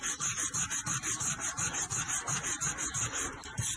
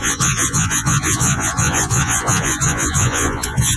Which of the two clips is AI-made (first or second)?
second